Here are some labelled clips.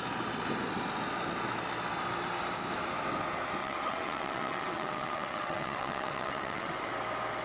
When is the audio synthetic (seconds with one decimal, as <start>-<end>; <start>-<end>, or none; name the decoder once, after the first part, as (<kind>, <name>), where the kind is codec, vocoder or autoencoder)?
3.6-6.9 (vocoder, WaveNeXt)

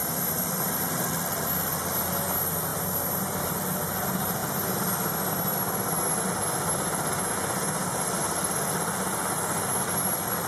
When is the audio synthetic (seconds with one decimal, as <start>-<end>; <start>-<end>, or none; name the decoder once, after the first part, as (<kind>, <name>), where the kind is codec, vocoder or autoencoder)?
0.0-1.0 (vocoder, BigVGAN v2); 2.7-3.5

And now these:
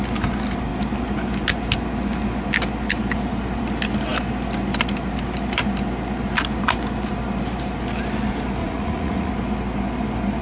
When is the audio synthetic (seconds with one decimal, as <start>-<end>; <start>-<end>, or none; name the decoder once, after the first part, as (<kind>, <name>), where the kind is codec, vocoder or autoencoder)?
8.6-9.3 (vocoder, Vocos)

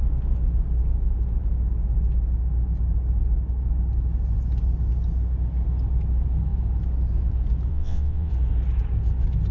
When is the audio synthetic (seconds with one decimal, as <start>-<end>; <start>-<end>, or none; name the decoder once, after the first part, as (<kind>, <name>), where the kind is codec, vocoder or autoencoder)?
7.7-8.3 (vocoder, WaveNeXt)

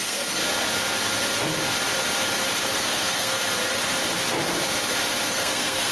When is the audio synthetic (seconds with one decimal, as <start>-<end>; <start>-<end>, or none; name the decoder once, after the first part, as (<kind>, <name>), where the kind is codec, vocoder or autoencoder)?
0.0-0.4 (codec, SNAC); 2.8-3.4; 5.3-5.9

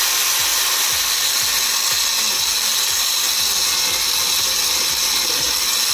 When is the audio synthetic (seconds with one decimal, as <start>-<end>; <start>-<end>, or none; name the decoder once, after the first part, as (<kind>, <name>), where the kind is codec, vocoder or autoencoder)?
none

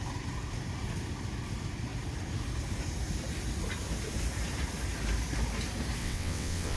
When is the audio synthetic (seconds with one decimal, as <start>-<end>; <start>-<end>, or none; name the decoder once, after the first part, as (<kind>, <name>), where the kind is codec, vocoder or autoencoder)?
6.0-6.8 (vocoder, WaveNeXt)